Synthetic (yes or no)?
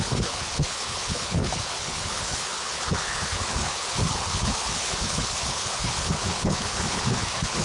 yes